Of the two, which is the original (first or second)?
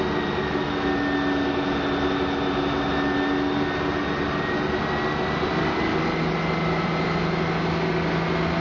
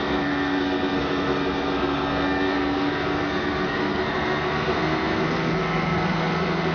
first